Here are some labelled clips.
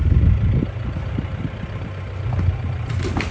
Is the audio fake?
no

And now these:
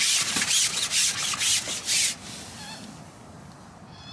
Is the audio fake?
no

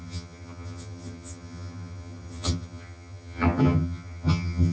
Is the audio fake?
yes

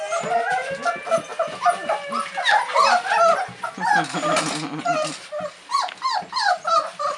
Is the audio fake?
no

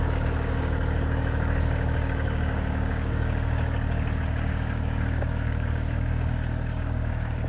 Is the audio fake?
yes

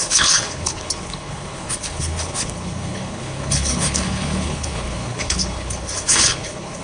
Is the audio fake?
yes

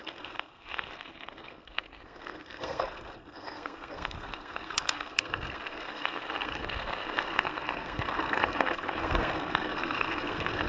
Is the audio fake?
yes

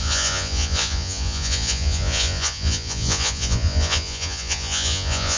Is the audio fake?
yes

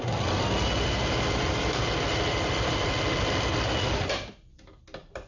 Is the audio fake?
no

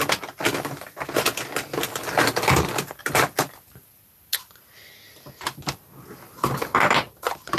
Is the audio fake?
no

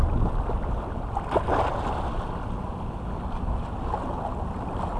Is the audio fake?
no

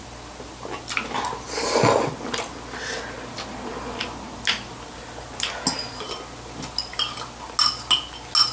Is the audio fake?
no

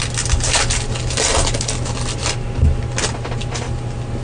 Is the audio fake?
no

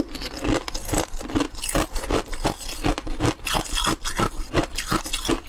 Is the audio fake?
no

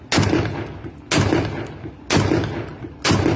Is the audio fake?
no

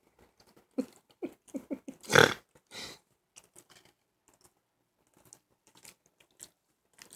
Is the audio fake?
no